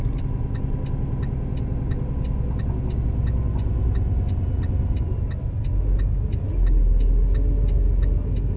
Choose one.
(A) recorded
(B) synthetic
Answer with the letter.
A